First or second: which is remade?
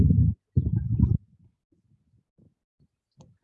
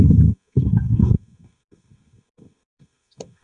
second